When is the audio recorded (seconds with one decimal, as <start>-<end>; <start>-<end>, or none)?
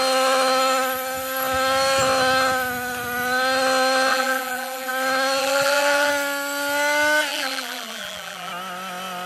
0.0-4.1; 4.9-5.4; 6.1-7.3; 8.5-9.3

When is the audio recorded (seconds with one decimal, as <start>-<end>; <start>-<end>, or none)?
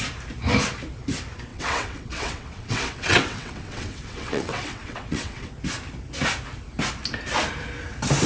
0.0-1.5; 5.5-8.3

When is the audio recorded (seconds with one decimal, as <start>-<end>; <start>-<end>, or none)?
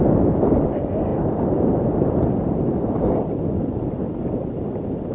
0.0-1.1; 4.2-5.1